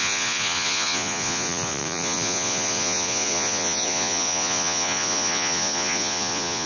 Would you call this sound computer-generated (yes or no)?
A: yes